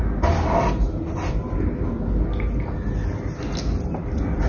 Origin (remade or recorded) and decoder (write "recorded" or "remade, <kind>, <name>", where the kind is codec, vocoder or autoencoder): recorded